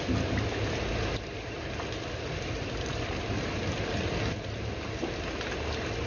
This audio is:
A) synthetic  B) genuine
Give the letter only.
B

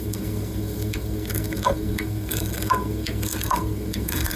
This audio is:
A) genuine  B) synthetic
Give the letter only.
B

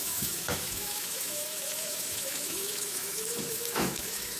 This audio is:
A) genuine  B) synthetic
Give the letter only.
B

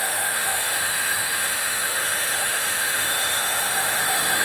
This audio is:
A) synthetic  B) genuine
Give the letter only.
A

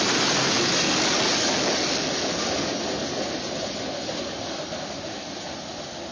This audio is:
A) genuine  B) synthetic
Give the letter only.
B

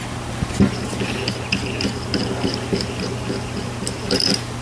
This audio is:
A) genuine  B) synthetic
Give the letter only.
A